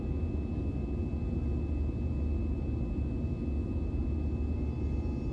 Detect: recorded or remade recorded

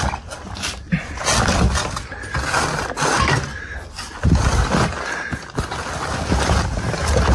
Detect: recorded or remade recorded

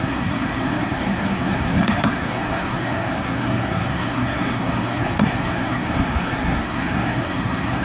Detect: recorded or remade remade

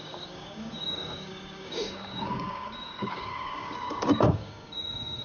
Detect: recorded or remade remade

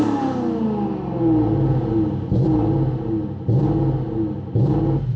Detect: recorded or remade recorded